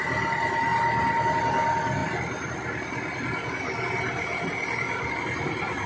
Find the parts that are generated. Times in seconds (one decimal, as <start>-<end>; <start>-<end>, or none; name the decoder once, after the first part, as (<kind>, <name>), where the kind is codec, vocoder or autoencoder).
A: none